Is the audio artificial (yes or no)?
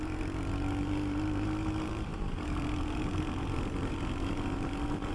yes